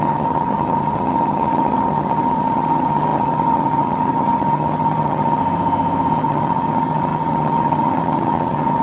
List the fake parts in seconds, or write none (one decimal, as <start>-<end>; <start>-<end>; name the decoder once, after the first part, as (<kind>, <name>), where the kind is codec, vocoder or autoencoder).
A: 0.0-5.4 (vocoder, HiFi-GAN); 6.1-8.8